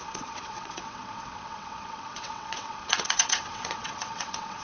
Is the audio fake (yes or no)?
yes